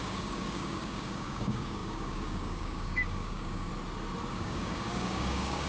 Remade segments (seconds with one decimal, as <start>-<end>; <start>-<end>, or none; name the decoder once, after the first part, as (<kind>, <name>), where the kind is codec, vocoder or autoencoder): 0.0-3.7 (codec, DAC); 4.3-5.7